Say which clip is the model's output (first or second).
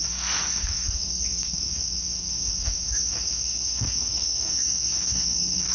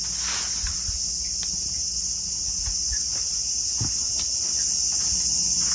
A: first